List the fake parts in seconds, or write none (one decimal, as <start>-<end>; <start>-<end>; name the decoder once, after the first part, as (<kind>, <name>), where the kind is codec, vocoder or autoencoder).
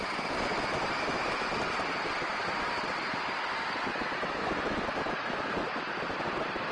none